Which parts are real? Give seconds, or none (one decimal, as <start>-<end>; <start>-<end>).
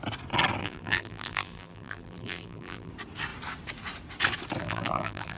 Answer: 0.0-0.6; 2.9-4.6